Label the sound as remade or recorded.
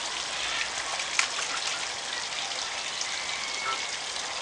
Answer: recorded